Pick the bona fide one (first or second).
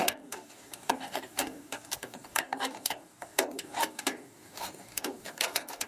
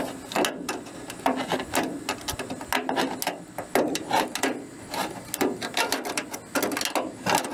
second